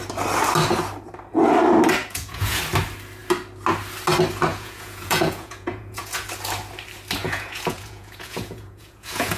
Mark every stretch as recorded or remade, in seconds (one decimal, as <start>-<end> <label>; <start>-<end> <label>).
0.0-2.0 recorded; 2.0-2.6 remade; 2.6-4.5 recorded; 4.5-6.3 remade; 6.3-7.2 recorded; 7.2-9.4 remade